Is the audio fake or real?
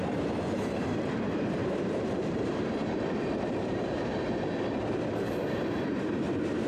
fake